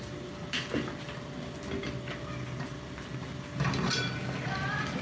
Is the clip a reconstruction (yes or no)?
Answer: no